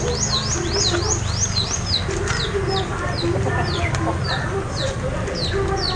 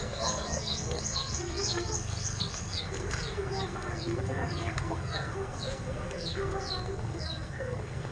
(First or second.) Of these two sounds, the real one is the first